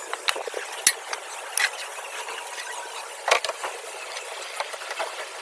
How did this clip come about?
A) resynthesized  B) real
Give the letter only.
B